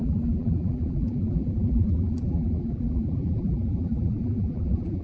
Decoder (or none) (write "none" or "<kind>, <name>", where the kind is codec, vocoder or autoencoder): vocoder, BigVGAN v2